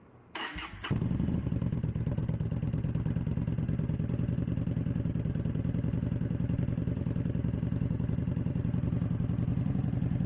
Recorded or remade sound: remade